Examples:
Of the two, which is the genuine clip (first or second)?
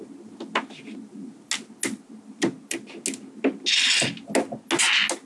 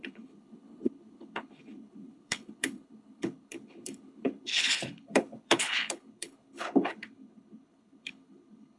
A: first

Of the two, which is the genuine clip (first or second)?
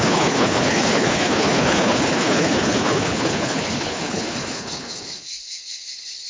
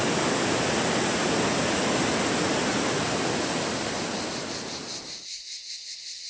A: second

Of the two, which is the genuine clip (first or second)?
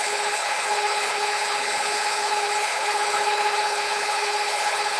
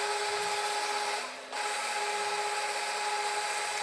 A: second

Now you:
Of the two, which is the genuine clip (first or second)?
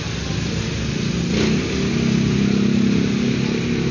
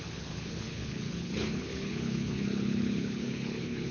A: first